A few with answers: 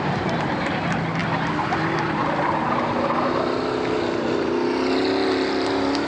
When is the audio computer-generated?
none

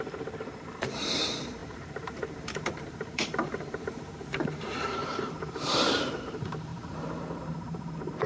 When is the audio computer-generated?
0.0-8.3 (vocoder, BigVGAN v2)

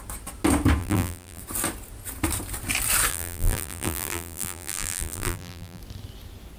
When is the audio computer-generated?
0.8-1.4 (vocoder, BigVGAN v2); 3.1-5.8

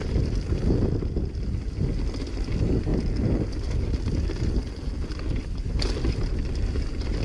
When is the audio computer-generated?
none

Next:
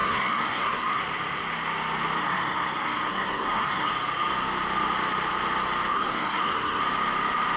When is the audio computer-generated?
0.0-1.0 (codec, SNAC); 2.2-3.9; 5.9-6.8

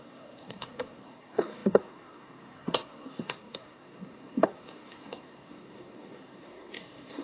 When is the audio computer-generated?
0.0-7.2 (codec, SNAC)

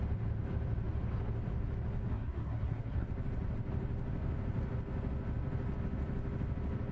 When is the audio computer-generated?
2.1-3.1 (codec, SNAC)

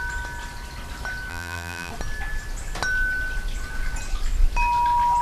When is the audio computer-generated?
1.3-1.9 (vocoder, BigVGAN v2)